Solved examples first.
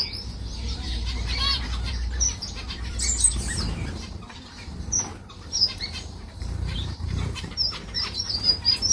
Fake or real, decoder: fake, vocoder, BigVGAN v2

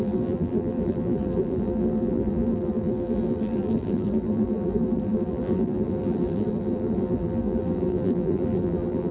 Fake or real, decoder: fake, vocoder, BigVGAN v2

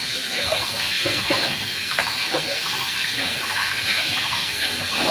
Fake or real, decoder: fake, codec, SNAC